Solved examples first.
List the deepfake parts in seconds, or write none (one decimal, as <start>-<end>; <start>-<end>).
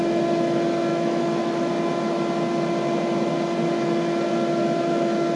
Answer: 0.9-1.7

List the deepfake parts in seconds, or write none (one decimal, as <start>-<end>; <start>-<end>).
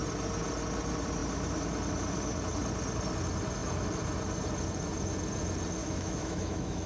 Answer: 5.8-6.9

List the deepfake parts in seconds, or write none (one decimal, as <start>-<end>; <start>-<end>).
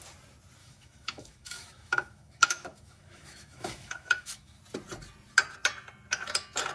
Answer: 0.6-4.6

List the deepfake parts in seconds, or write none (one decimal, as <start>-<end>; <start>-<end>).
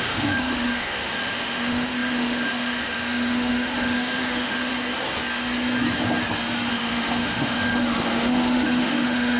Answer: 0.0-4.7; 6.7-9.4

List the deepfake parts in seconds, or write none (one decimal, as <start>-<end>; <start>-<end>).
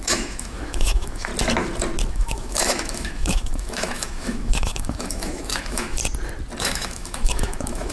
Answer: 0.0-1.3; 2.1-6.0; 6.6-7.9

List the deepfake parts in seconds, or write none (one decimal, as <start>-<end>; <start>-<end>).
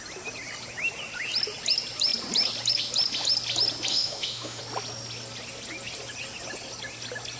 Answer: 3.9-4.6